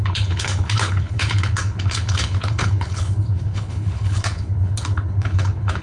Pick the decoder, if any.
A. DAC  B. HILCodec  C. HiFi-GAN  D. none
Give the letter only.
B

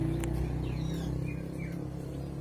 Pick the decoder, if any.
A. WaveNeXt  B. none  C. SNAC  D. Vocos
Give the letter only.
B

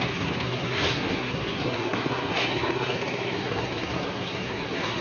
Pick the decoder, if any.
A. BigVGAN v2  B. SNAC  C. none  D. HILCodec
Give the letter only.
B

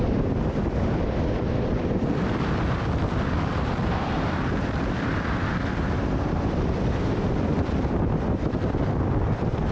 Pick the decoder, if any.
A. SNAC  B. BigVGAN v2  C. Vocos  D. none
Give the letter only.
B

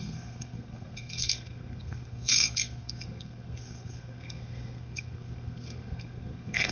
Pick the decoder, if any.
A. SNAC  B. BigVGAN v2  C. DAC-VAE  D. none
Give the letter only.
A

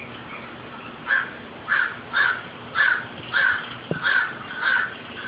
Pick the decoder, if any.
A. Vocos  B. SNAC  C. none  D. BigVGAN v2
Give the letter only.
C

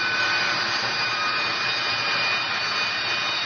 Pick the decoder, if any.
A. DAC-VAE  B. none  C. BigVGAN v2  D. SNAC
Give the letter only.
C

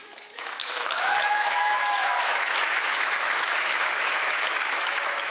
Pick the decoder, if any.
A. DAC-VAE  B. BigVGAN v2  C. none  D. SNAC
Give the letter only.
A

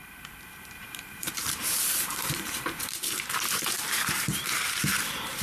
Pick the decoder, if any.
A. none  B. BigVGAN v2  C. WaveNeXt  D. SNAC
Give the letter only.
B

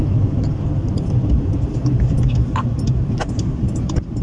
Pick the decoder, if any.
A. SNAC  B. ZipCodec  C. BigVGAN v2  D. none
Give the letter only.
D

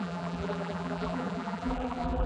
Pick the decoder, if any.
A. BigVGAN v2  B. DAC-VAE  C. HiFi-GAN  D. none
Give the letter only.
A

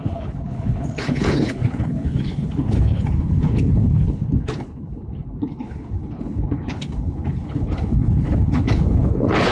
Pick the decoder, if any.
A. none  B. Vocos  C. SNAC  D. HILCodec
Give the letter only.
D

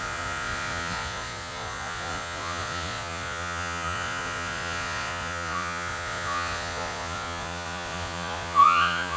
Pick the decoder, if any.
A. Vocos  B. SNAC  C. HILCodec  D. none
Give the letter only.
A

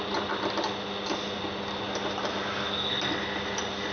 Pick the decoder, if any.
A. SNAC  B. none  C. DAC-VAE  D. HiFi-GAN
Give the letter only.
B